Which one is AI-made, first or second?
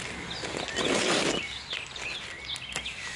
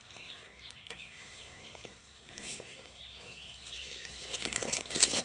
second